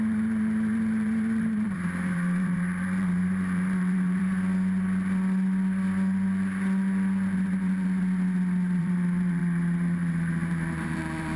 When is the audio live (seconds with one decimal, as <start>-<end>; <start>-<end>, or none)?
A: 4.3-8.8